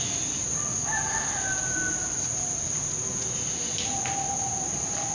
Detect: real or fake real